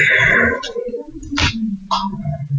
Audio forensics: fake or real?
real